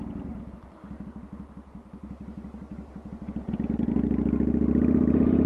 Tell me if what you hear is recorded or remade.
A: recorded